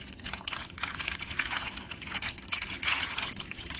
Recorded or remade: remade